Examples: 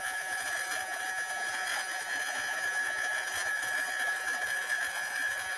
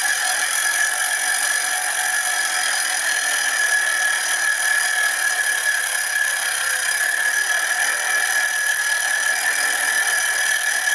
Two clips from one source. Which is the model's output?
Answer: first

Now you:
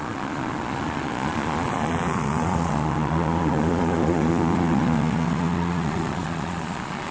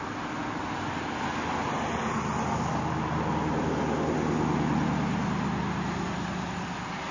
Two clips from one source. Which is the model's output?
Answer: first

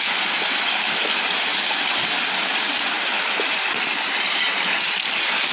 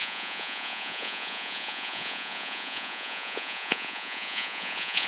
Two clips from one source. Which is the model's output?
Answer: second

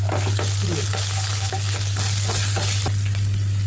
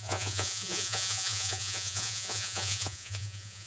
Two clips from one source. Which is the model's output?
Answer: second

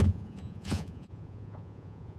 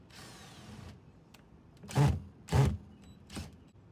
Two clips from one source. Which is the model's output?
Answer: first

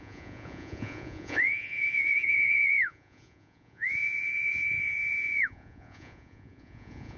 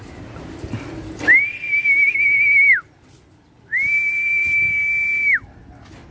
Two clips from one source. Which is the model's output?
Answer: first